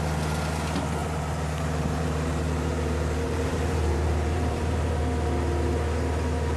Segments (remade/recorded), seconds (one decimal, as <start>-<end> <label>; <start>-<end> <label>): 0.0-1.0 recorded; 1.0-5.0 remade; 5.0-6.6 recorded